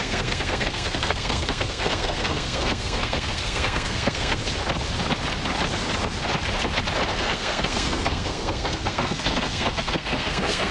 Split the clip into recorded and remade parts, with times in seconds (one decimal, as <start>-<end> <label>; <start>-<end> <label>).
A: 0.0-4.4 remade; 4.4-7.1 recorded; 7.1-10.7 remade